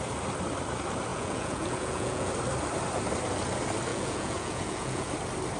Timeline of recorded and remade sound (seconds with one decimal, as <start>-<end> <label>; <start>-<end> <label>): 0.0-1.1 recorded; 1.1-2.3 remade; 2.3-3.9 recorded; 3.9-5.1 remade; 5.1-5.6 recorded